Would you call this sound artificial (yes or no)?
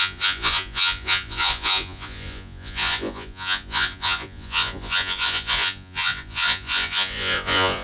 yes